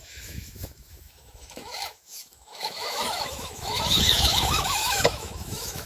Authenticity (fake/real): fake